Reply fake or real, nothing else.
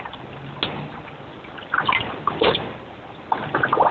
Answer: real